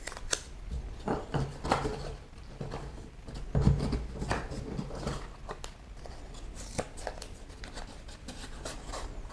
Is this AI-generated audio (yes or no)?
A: no